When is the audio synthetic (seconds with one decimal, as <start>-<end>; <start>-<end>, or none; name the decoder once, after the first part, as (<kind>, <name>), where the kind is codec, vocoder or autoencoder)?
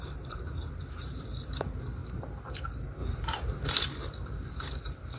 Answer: 0.0-5.2 (vocoder, BigVGAN v2)